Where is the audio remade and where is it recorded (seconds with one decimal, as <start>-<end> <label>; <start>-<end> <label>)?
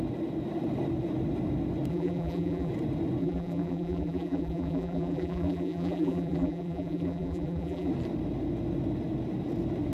0.0-1.9 recorded; 1.9-2.7 remade; 2.7-3.2 recorded; 3.2-7.9 remade; 7.9-9.9 recorded